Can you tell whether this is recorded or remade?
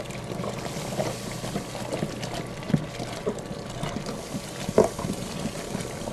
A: recorded